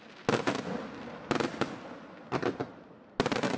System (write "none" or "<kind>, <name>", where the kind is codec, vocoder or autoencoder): none